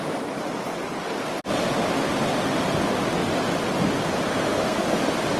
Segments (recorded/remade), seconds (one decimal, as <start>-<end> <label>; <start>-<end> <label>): 0.0-4.3 recorded; 4.3-5.0 remade; 5.0-5.4 recorded